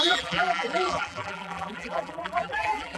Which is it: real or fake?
fake